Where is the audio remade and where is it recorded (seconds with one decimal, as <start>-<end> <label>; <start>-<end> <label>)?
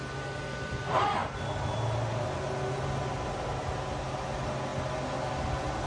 0.0-5.9 recorded